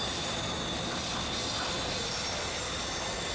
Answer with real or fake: real